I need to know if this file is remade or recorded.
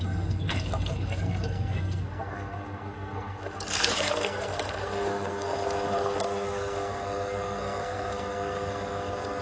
remade